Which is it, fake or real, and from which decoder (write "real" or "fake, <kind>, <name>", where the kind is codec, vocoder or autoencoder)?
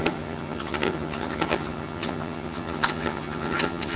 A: fake, vocoder, HiFi-GAN